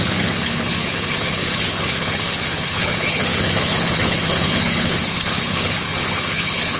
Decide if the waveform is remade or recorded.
remade